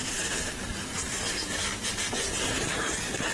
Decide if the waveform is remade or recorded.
recorded